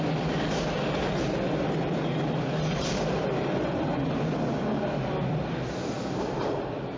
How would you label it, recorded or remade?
recorded